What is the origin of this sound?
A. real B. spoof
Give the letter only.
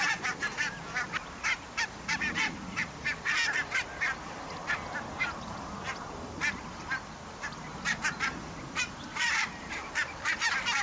B